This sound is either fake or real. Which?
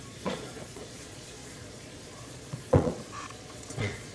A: fake